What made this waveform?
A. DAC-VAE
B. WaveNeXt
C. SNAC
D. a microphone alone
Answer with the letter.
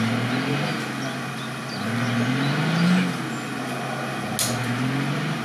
D